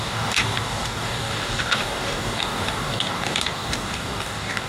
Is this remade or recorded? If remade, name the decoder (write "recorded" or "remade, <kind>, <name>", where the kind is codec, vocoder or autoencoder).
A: remade, codec, DAC